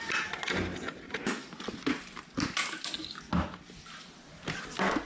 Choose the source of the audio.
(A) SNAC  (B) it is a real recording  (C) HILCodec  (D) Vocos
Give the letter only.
B